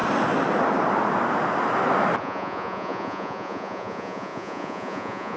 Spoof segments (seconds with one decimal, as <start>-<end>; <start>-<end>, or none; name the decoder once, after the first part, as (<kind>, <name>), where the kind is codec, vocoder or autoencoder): 2.2-5.4 (vocoder, Vocos)